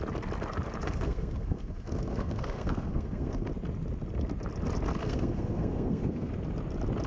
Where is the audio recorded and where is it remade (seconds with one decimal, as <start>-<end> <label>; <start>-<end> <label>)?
0.0-0.8 recorded; 0.8-3.5 remade; 3.5-5.0 recorded; 5.0-6.3 remade; 6.3-7.1 recorded